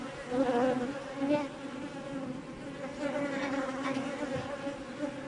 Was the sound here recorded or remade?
recorded